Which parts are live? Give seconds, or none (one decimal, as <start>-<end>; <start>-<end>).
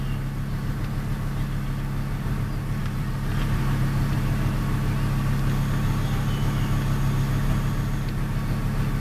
0.0-2.8; 4.6-9.0